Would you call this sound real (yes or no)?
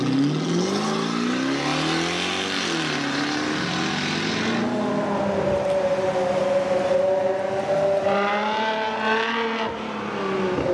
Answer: yes